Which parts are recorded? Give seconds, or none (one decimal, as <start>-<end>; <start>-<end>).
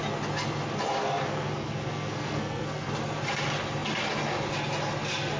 0.0-1.0; 2.9-5.4